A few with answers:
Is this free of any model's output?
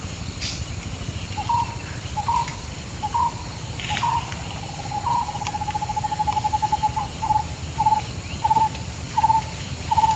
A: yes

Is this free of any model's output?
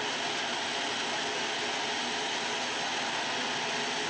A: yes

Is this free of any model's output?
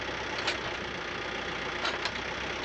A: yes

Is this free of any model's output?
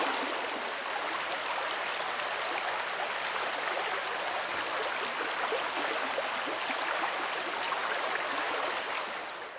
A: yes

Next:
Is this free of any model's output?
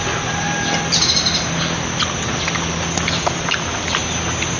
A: yes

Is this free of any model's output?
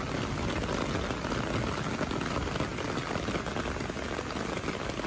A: yes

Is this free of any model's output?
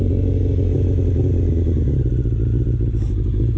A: yes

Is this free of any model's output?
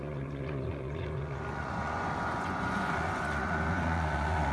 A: no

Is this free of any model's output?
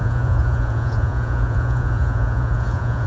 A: no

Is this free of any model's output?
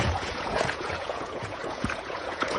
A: no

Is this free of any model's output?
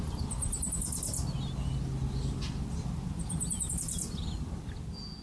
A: yes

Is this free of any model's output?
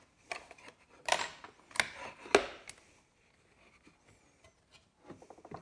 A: yes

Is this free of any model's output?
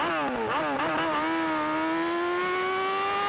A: yes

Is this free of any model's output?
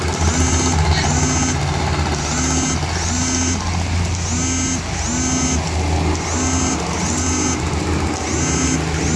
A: yes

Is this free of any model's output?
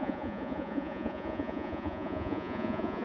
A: no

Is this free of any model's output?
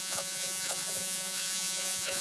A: no